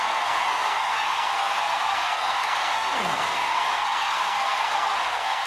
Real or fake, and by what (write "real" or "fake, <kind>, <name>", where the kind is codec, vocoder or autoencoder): fake, codec, SNAC